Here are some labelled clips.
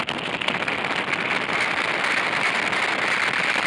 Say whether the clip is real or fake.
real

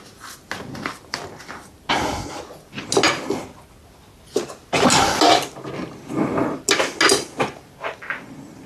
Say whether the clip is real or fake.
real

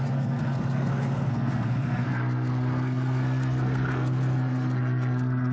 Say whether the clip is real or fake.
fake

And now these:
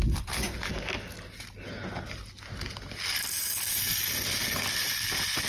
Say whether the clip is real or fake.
real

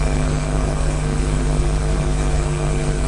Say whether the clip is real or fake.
fake